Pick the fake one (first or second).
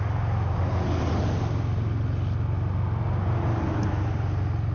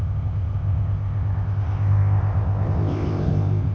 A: second